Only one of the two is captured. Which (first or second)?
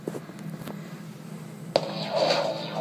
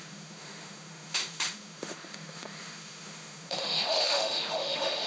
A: first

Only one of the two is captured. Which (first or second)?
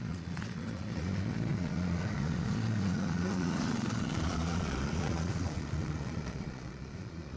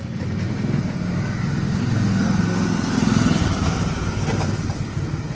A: second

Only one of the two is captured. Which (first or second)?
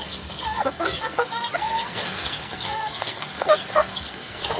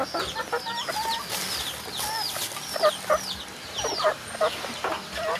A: second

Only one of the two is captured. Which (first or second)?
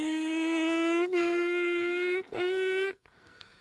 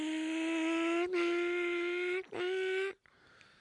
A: second